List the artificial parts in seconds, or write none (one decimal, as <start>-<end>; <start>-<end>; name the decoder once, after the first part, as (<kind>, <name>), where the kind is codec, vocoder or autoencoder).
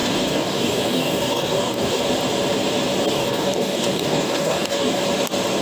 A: 0.0-2.0 (codec, DAC); 3.1-5.0